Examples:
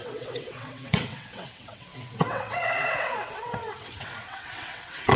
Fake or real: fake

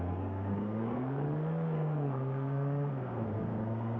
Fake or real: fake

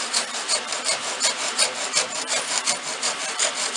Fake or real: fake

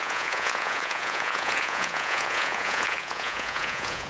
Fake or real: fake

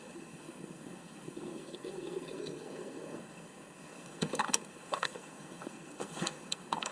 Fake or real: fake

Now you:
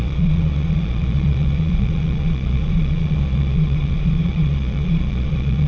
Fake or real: fake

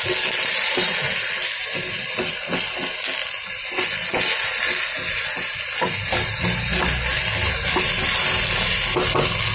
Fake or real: real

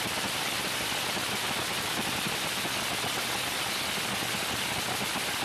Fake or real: real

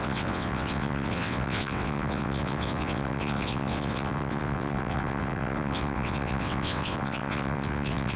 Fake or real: fake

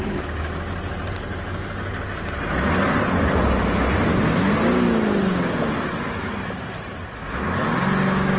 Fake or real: real